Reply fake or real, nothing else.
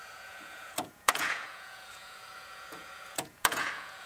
fake